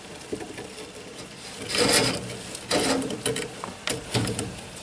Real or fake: real